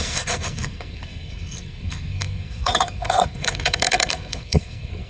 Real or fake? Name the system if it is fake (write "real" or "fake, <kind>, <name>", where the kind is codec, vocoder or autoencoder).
fake, codec, SNAC